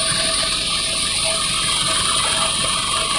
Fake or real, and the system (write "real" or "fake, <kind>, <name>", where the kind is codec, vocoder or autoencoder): real